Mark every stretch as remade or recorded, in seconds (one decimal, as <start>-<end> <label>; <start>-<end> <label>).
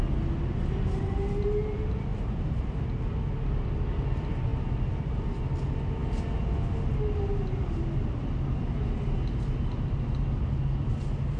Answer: 0.0-11.4 recorded